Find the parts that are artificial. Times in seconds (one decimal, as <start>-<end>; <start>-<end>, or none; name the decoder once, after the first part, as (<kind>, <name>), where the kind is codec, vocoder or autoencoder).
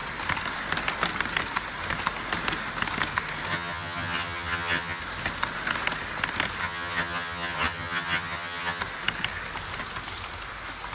3.5-5.0 (vocoder, HiFi-GAN); 6.6-8.8